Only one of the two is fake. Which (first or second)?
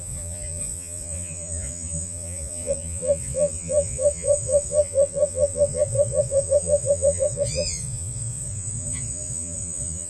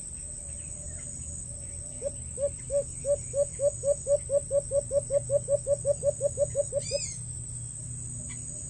first